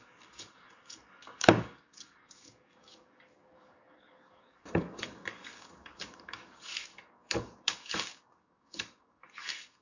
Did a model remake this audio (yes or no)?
yes